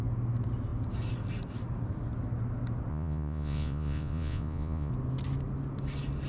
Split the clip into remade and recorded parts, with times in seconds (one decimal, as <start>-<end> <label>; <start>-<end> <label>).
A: 0.0-2.9 recorded; 2.9-4.9 remade; 4.9-6.3 recorded